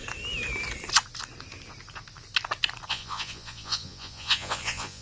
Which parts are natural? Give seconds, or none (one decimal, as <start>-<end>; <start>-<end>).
0.0-2.9